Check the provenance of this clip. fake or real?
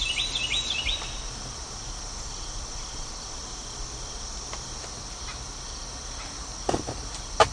real